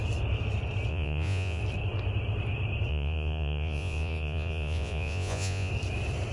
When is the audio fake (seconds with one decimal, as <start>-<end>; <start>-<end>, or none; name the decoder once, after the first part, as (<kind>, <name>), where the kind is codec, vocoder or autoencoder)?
0.9-1.6 (vocoder, Vocos); 2.9-5.7